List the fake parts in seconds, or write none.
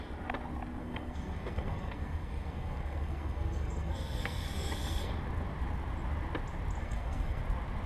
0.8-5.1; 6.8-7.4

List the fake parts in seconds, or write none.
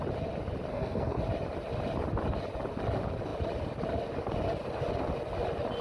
0.7-1.2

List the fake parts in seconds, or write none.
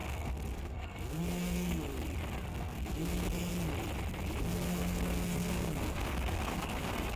0.0-1.9; 2.5-3.5; 4.4-7.2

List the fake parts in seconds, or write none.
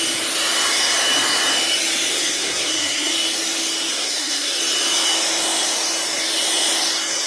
2.1-3.1; 3.9-4.6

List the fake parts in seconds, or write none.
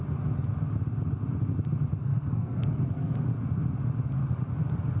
2.0-3.1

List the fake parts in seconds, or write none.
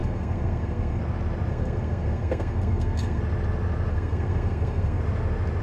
0.0-1.0; 1.5-3.2; 3.9-5.0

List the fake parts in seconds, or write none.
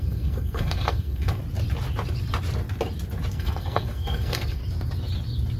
0.0-1.4; 3.3-4.6